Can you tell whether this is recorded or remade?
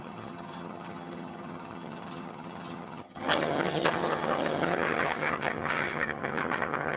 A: remade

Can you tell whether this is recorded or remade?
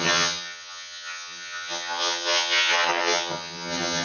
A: remade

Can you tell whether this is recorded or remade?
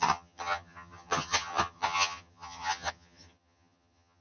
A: remade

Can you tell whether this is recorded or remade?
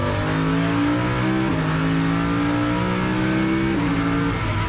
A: recorded